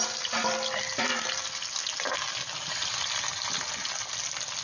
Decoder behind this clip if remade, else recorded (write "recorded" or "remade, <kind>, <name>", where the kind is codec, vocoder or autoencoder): remade, vocoder, BigVGAN v2